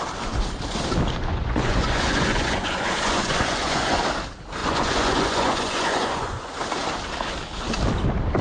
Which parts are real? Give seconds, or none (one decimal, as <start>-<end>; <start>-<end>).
0.0-1.3; 4.0-4.6; 6.5-8.4

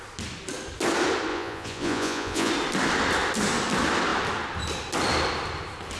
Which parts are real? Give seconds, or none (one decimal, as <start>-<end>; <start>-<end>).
0.0-1.3; 2.5-6.0